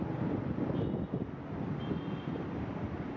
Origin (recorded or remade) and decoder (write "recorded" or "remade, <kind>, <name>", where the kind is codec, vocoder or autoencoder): recorded